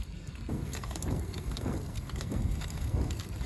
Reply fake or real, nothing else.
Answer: fake